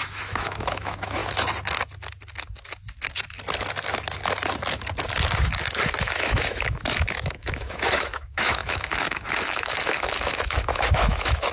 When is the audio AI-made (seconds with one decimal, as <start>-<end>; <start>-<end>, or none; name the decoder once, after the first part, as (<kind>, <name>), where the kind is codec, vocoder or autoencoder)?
0.0-1.2 (autoencoder, DAC-VAE); 6.0-11.5